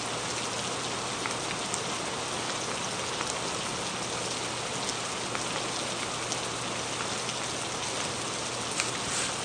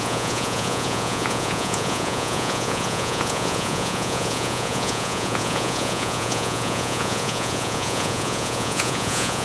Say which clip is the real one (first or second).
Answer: first